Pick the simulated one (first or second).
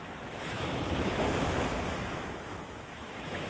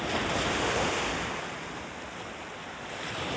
first